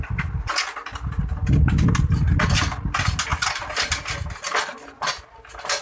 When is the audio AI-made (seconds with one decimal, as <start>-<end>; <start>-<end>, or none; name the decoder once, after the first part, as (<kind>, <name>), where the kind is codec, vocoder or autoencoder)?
none